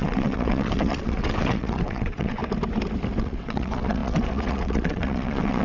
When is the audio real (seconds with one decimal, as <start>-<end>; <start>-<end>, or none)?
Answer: 2.4-3.2